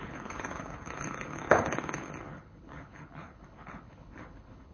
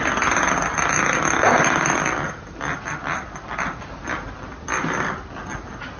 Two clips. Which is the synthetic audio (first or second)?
first